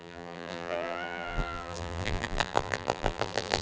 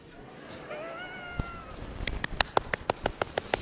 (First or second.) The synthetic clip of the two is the first